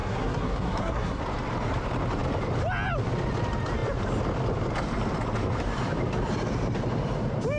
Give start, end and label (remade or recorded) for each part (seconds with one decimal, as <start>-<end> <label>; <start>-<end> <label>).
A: 0.0-1.2 remade; 1.2-7.6 recorded